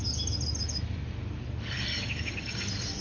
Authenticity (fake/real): real